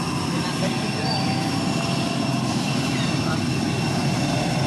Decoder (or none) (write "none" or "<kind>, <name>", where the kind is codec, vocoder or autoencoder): none